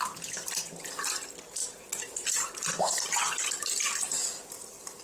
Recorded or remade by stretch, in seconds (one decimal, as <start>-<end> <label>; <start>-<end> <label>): 0.0-1.6 recorded; 1.6-4.0 remade; 4.0-5.0 recorded